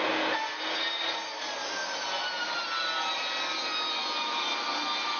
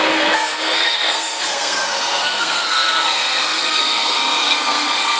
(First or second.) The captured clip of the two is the first